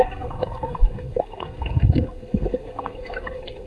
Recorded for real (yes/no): no